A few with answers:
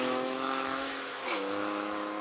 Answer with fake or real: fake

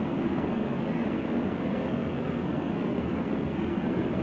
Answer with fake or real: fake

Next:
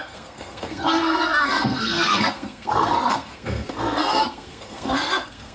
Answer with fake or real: fake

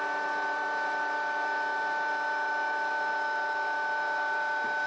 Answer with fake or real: real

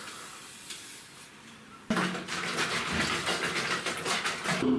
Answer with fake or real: real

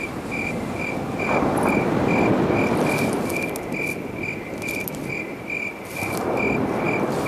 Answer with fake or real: real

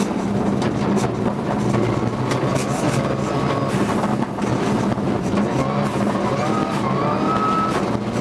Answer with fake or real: real